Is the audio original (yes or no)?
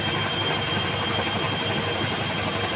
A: yes